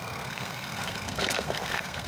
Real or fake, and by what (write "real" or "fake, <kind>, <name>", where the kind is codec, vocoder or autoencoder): fake, codec, SNAC